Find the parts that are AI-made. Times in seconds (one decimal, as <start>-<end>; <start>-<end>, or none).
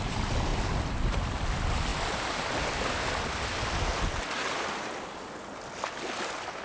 none